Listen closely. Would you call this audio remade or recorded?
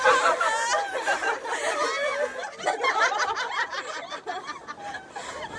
recorded